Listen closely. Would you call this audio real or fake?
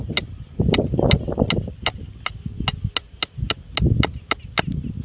real